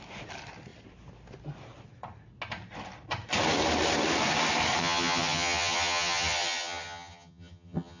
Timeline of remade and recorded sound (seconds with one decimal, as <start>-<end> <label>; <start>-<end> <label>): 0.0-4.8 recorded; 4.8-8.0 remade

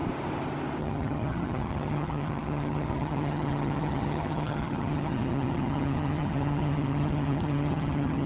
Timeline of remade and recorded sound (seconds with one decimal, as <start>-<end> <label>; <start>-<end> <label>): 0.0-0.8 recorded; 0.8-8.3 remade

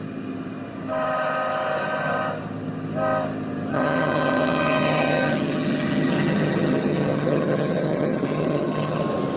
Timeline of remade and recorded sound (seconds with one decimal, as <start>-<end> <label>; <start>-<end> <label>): 0.0-3.7 recorded; 3.7-9.0 remade; 9.0-9.4 recorded

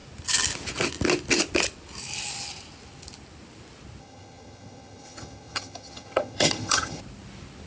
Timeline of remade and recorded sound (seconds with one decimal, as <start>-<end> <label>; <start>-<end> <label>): 0.0-4.0 recorded; 4.0-7.0 remade; 7.0-7.7 recorded

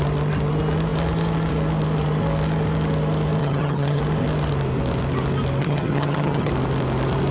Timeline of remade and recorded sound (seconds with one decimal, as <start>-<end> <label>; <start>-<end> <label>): 0.0-3.4 recorded; 3.4-4.0 remade; 4.0-5.6 recorded; 5.6-6.5 remade; 6.5-7.3 recorded